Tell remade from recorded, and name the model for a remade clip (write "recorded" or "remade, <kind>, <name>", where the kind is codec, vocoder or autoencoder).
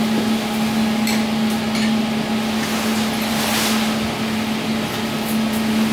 recorded